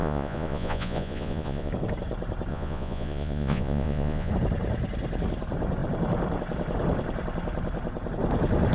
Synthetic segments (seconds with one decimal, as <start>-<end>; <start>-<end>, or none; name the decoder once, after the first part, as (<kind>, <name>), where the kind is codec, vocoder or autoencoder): 0.0-1.7 (vocoder, Vocos); 2.5-4.3